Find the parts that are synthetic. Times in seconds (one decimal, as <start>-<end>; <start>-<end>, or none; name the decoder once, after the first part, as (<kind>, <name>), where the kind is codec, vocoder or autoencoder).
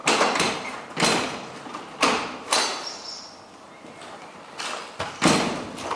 none